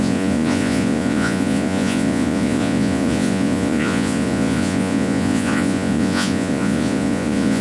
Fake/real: fake